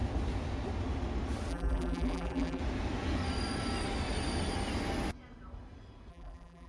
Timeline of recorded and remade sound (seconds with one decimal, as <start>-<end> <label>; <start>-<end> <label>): 0.0-1.5 recorded; 1.5-2.6 remade; 2.6-6.1 recorded; 6.1-6.7 remade